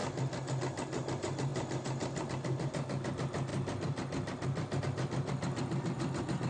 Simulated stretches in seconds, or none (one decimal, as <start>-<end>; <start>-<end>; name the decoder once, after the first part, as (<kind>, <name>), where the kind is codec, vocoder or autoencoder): none